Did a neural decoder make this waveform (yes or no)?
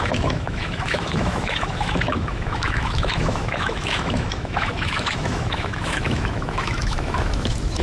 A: yes